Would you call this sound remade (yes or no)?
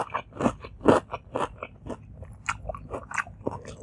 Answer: no